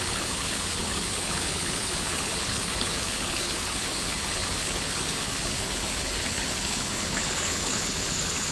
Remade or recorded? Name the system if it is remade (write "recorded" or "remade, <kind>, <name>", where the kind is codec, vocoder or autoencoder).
remade, codec, HILCodec